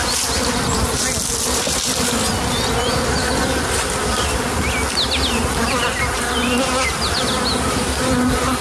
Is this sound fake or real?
real